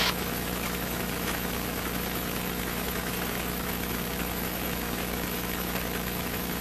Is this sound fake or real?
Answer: fake